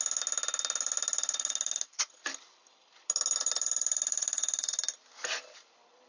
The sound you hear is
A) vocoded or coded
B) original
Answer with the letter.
B